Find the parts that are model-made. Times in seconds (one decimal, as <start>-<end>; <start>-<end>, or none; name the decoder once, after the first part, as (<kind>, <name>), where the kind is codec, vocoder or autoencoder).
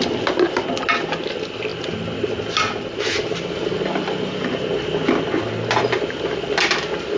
none